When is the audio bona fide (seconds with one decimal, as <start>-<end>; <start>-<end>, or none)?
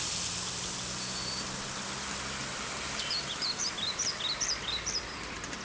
0.0-2.4